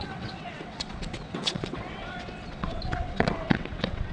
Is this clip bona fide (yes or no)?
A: no